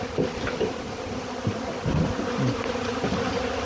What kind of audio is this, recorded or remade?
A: recorded